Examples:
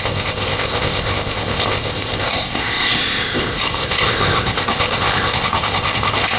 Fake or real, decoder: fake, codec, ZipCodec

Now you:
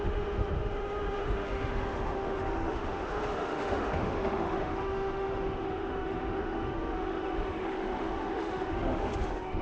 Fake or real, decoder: fake, autoencoder, DAC-VAE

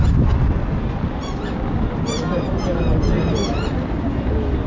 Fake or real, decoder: real